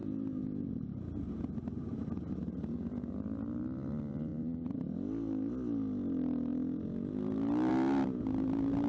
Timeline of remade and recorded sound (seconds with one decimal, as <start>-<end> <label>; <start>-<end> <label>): 0.0-8.9 recorded